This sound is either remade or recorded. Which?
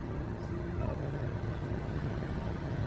remade